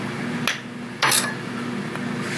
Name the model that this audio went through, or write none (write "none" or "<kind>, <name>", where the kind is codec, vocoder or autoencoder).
none